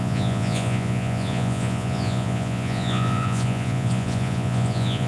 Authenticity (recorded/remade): remade